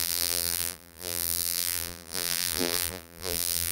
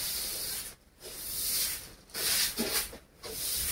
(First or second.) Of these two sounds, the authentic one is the second